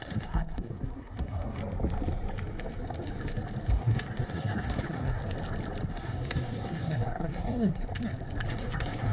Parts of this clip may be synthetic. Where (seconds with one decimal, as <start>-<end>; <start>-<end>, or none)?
0.0-1.6; 3.7-5.2; 5.9-7.9; 8.5-9.1